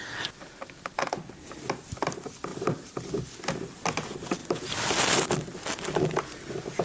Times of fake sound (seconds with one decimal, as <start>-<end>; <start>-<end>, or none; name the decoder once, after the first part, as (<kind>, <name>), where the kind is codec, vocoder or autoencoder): 2.5-3.1 (vocoder, BigVGAN v2)